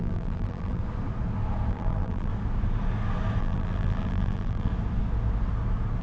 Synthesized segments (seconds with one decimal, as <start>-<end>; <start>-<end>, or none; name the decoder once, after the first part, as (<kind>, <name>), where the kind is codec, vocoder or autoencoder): 0.0-0.8 (vocoder, BigVGAN v2); 1.7-2.3; 3.4-4.7